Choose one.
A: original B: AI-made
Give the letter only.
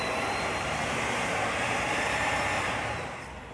B